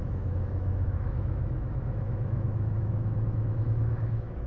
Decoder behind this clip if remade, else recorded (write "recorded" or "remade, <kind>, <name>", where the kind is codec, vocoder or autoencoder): remade, autoencoder, DAC-VAE